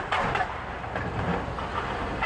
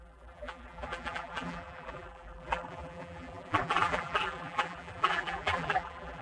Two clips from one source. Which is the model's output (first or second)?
second